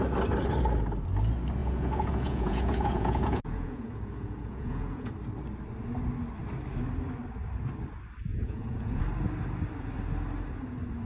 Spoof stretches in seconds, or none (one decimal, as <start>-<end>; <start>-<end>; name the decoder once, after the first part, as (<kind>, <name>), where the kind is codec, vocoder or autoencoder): 1.6-5.1 (vocoder, Vocos); 8.3-9.0